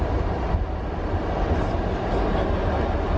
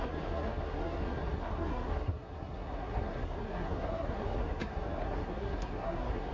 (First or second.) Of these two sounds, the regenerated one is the second